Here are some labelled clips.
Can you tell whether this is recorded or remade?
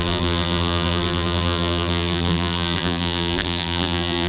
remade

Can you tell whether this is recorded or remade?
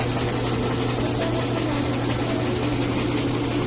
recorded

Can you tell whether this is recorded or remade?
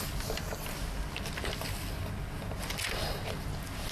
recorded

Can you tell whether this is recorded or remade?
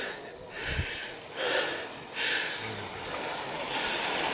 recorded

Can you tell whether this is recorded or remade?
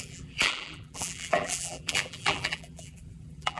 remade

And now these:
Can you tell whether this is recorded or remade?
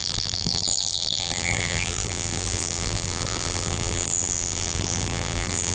remade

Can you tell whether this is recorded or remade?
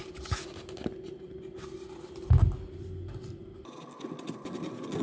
recorded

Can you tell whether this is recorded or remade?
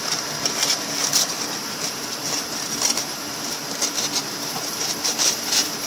remade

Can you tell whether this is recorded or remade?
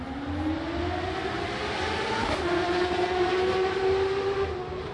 recorded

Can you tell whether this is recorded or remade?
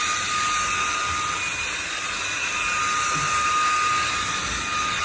recorded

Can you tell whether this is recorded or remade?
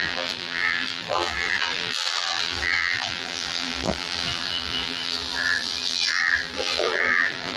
remade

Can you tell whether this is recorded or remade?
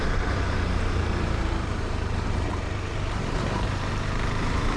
remade